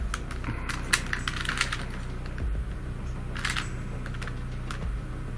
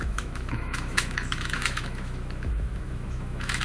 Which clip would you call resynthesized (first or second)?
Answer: second